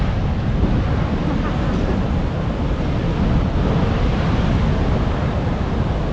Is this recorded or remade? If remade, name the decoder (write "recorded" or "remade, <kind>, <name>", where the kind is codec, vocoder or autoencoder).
recorded